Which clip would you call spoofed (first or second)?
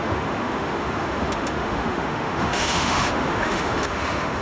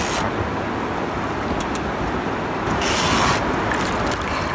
first